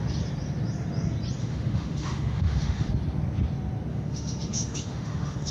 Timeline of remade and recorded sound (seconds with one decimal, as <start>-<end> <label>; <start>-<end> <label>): 0.0-1.4 recorded; 1.4-2.9 remade; 2.9-3.9 recorded; 3.9-5.5 remade